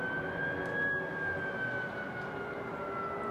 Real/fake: real